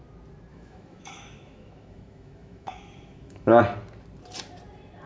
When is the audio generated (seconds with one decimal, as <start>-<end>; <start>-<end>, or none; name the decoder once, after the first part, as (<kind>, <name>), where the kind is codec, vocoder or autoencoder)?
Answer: 0.5-3.6 (autoencoder, DAC-VAE)